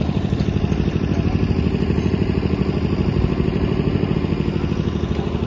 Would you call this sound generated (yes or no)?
no